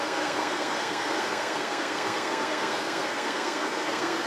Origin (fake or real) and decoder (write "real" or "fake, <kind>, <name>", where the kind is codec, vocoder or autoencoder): fake, codec, SNAC